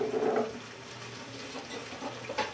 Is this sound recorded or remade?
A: remade